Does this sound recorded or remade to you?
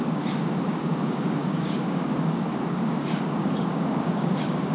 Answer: remade